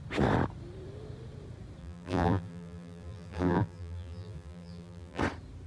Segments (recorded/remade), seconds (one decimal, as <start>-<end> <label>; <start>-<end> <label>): 0.0-1.8 recorded; 1.8-5.2 remade; 5.2-5.7 recorded